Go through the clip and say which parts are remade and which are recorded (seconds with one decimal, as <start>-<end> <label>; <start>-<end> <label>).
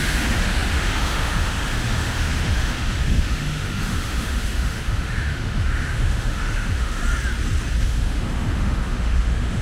0.0-7.0 remade; 7.0-7.8 recorded; 7.8-9.6 remade